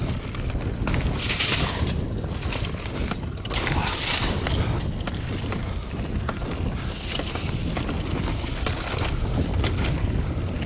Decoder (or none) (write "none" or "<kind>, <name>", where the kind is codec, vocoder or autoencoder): none